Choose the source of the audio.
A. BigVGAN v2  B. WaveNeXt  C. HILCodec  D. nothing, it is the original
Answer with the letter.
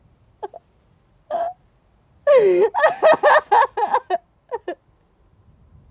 D